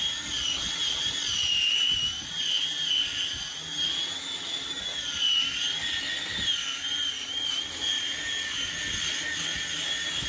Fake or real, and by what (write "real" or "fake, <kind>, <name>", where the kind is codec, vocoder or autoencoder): real